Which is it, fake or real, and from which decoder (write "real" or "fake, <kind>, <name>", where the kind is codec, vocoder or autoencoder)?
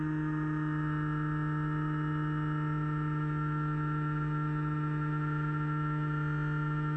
real